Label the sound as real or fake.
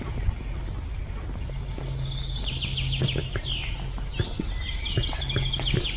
real